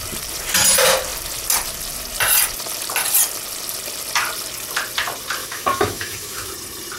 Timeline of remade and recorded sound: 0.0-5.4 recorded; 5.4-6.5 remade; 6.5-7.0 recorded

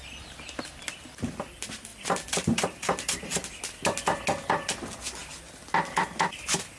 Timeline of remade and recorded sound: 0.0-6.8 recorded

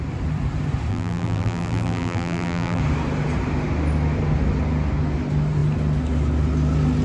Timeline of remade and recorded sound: 0.0-0.9 recorded; 0.9-2.8 remade; 2.8-7.0 recorded

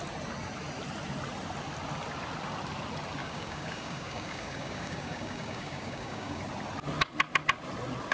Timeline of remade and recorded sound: 0.0-3.2 recorded; 3.2-6.4 remade; 6.4-8.1 recorded

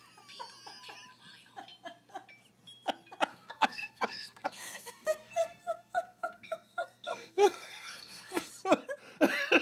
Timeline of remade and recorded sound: 0.0-3.3 recorded; 3.3-8.5 remade; 8.5-9.6 recorded

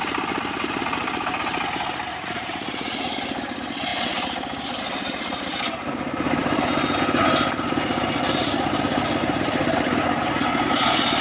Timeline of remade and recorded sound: 0.0-2.1 recorded; 2.1-3.1 remade; 3.1-11.2 recorded